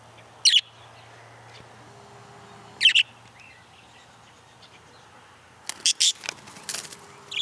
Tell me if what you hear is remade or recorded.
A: recorded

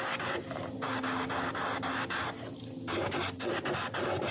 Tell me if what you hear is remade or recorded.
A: recorded